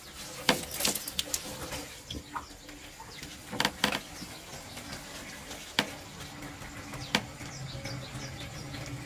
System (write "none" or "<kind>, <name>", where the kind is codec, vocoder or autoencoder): none